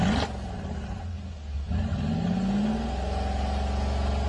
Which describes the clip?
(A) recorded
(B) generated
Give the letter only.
A